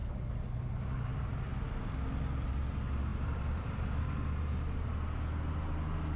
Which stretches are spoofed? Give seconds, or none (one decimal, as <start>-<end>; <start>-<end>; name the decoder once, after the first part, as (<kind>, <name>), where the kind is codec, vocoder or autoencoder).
3.1-4.0 (vocoder, BigVGAN v2)